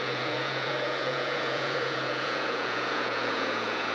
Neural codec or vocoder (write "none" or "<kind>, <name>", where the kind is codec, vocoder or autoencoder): vocoder, Vocos